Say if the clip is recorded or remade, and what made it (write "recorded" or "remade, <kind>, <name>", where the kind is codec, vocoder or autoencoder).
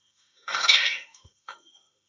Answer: remade, autoencoder, DAC-VAE